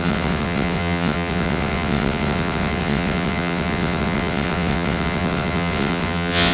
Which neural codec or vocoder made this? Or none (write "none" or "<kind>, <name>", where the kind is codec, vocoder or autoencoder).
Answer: vocoder, WaveNeXt